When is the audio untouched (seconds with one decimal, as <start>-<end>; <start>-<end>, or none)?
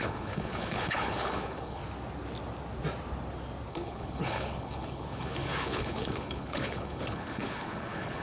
1.8-3.7